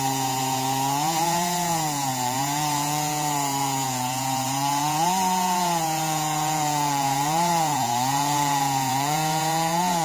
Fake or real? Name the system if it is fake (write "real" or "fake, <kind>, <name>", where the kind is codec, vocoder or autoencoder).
fake, vocoder, Vocos